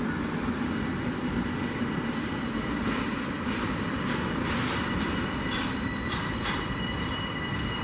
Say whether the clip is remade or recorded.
remade